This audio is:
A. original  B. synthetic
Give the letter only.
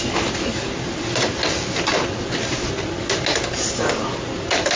A